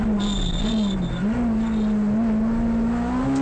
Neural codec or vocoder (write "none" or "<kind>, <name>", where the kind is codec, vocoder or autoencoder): none